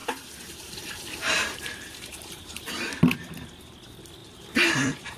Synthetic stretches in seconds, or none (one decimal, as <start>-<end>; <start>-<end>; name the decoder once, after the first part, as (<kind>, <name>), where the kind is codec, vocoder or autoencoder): 0.0-2.8 (vocoder, BigVGAN v2); 4.2-5.2